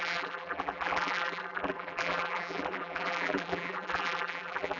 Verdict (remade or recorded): remade